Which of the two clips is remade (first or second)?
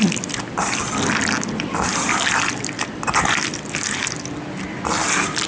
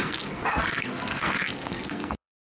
second